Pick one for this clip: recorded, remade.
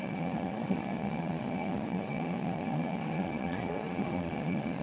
remade